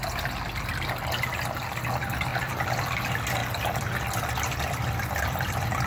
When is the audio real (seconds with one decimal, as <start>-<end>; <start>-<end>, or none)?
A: 0.0-5.9